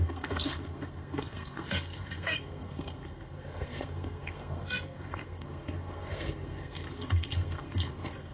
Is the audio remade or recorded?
remade